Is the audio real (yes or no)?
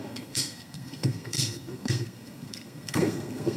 no